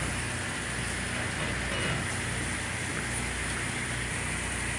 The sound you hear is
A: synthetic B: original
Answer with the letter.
B